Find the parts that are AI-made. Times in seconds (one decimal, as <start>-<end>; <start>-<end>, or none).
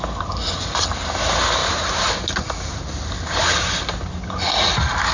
1.6-2.1